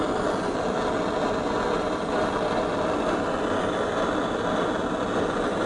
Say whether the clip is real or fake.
real